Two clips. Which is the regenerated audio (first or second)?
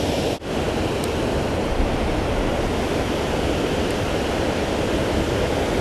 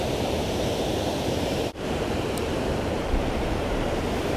second